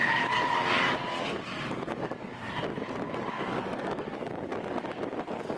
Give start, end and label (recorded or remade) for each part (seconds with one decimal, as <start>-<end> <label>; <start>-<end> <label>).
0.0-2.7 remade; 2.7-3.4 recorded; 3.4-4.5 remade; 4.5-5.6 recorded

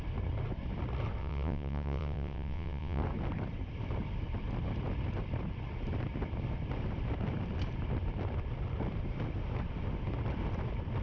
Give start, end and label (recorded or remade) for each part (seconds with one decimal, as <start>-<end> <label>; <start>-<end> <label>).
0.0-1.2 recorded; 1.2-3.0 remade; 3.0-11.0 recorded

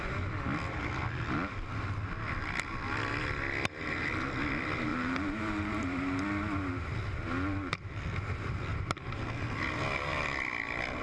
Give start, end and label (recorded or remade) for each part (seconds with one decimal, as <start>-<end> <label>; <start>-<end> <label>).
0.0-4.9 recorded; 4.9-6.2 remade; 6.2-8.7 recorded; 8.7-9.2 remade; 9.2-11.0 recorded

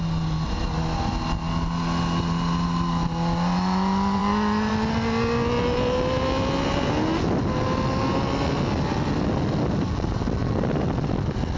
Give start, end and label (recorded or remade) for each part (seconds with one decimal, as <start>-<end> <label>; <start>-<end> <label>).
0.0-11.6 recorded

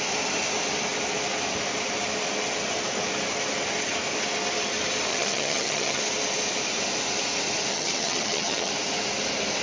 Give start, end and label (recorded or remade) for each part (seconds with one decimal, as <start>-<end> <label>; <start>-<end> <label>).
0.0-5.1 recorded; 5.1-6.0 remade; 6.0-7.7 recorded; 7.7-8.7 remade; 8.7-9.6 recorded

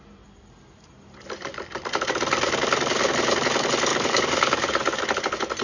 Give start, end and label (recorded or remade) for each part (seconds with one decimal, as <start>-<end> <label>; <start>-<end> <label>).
0.0-3.9 recorded; 3.9-5.0 remade; 5.0-5.6 recorded

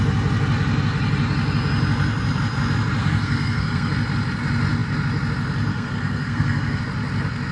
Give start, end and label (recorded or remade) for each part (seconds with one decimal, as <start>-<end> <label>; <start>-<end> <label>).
0.0-3.0 recorded; 3.0-3.9 remade; 3.9-5.7 recorded; 5.7-6.8 remade; 6.8-7.5 recorded

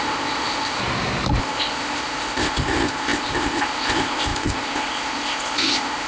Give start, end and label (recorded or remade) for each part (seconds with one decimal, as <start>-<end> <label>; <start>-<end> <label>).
0.0-0.8 remade; 0.8-1.4 recorded; 1.4-6.1 remade